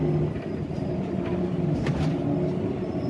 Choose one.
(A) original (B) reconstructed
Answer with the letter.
A